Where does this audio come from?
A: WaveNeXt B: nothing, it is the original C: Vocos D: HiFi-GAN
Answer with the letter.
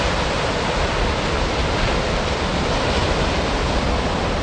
B